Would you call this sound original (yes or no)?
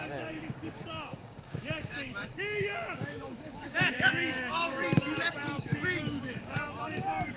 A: no